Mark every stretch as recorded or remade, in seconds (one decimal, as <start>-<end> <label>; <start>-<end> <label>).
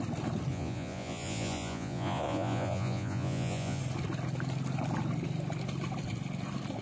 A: 0.0-0.5 recorded; 0.5-3.8 remade; 3.8-6.8 recorded